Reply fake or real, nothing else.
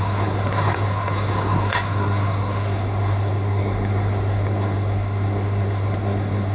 fake